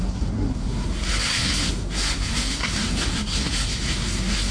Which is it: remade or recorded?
remade